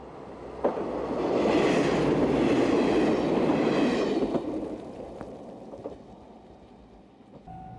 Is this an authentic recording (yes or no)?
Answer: yes